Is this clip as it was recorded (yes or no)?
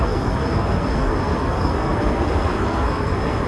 no